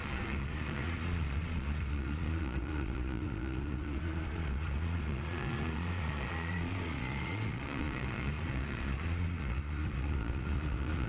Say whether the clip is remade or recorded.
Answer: remade